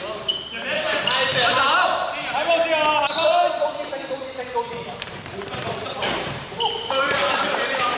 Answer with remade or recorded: remade